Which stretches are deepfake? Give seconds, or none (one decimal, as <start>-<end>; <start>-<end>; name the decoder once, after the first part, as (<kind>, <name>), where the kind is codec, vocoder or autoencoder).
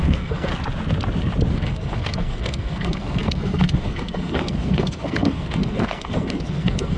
0.0-0.5 (codec, SNAC); 1.5-7.0